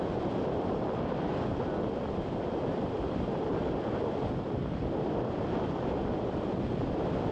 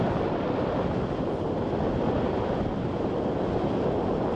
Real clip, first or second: second